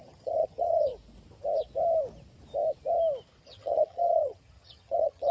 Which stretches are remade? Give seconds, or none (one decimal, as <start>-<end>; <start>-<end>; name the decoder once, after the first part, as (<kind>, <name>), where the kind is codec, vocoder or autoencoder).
0.0-0.9 (vocoder, HiFi-GAN); 3.4-5.3